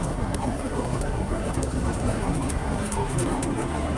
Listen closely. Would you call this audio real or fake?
fake